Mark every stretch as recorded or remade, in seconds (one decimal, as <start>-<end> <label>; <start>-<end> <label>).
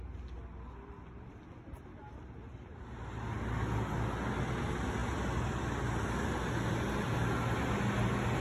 0.0-8.4 recorded